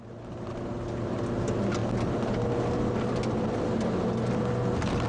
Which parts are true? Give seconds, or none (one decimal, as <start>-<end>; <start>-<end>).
0.0-5.1